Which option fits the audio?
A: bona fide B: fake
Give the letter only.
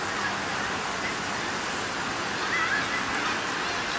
A